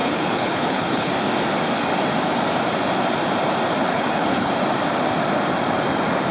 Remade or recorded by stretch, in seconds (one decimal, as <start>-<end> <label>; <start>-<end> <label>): 0.0-1.1 remade; 1.1-3.9 recorded; 3.9-4.5 remade; 4.5-6.3 recorded